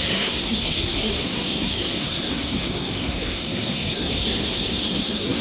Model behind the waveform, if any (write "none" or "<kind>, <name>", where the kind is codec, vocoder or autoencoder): codec, SNAC